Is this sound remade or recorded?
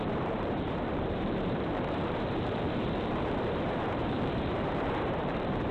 remade